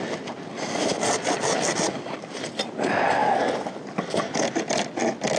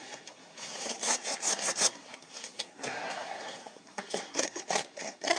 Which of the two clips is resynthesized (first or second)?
second